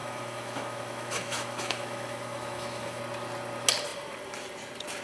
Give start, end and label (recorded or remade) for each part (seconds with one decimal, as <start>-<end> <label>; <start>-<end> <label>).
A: 0.0-3.0 remade; 3.0-5.0 recorded